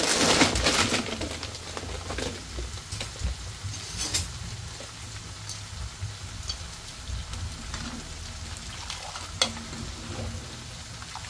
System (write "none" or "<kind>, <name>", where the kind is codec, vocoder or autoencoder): none